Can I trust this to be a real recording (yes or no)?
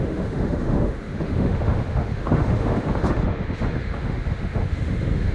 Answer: no